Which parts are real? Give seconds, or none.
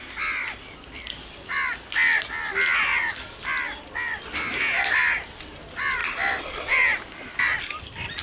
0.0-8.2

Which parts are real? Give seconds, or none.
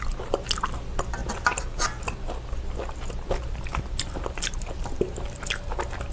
0.0-6.1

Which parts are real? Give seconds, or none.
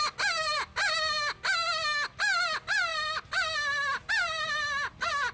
0.0-5.3